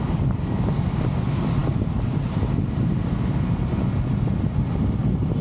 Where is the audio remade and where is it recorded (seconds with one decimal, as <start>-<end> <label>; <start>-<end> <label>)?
0.0-5.4 recorded